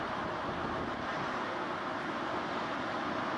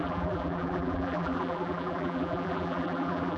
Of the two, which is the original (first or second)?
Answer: first